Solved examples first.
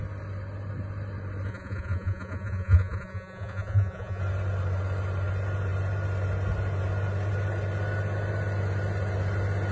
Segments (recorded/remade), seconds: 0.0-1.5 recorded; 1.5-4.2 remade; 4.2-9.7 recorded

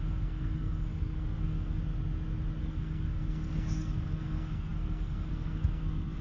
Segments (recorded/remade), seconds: 0.0-1.8 remade; 1.8-2.6 recorded; 2.6-6.2 remade

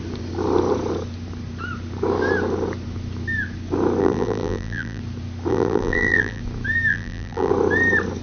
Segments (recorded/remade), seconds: 0.0-4.0 recorded; 4.0-5.0 remade; 5.0-5.5 recorded; 5.5-6.4 remade; 6.4-6.9 recorded; 6.9-7.5 remade; 7.5-8.2 recorded

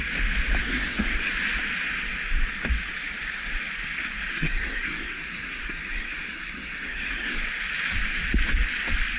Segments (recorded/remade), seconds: 0.0-0.6 recorded; 0.6-1.3 remade; 1.3-4.3 recorded; 4.3-7.4 remade; 7.4-9.2 recorded